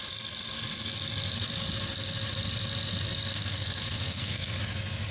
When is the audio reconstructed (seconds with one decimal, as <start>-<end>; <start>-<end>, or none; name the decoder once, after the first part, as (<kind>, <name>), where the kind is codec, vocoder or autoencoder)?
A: 3.3-4.6 (codec, SNAC)

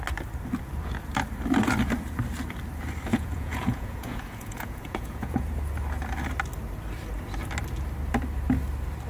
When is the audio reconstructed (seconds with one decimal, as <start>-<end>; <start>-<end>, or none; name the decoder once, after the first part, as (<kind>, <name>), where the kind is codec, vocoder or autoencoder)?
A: 3.1-5.5 (vocoder, Vocos)

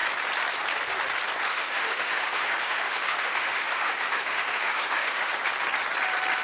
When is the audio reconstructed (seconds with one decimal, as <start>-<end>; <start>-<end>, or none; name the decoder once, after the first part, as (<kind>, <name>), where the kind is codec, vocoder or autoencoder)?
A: 1.5-5.3 (autoencoder, DAC-VAE)